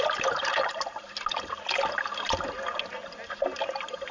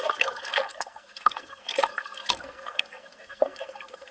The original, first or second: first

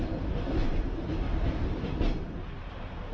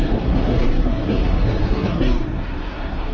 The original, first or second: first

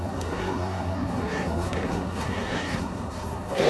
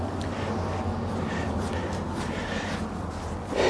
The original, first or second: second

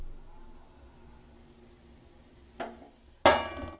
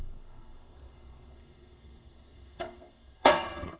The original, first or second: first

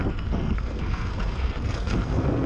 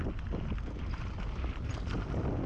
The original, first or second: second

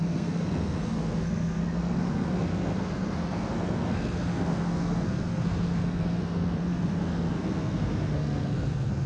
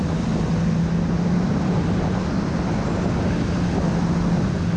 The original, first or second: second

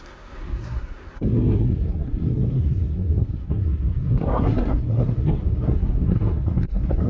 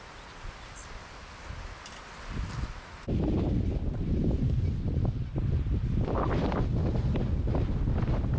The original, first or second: second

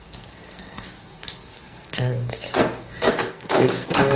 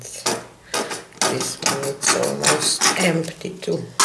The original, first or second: second